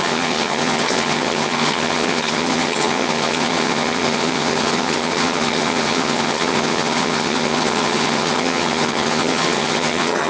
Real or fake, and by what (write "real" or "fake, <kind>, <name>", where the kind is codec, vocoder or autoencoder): fake, vocoder, HiFi-GAN